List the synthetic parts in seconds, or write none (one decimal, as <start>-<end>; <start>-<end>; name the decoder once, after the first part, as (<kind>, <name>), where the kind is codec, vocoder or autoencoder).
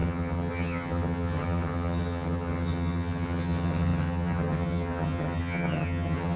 0.0-6.4 (vocoder, HiFi-GAN)